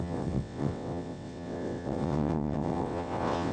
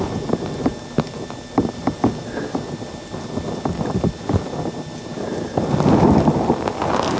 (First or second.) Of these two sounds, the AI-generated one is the first